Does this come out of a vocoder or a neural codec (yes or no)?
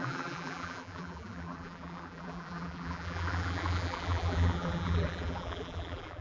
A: yes